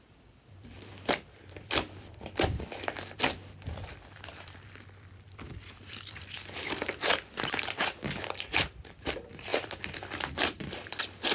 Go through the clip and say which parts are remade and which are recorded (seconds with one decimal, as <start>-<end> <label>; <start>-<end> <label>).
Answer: 0.0-11.3 remade